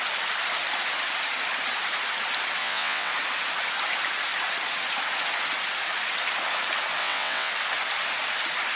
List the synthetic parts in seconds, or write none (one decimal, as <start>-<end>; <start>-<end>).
2.6-3.1; 7.0-7.5